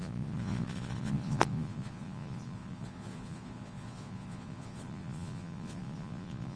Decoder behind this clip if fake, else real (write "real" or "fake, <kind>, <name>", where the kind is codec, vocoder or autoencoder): fake, vocoder, Vocos